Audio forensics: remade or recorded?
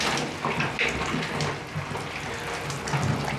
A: recorded